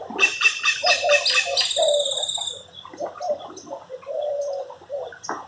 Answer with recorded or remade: recorded